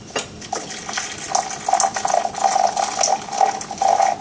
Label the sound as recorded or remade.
recorded